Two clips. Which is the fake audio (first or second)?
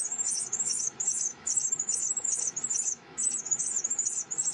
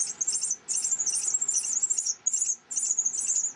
first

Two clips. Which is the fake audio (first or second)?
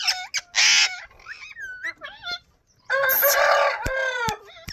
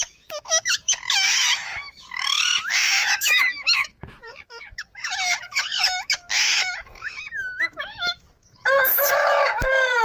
second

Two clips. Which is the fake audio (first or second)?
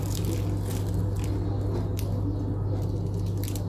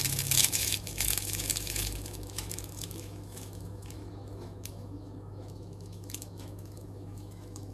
second